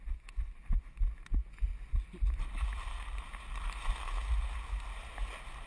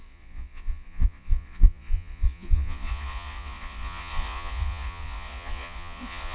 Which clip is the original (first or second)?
first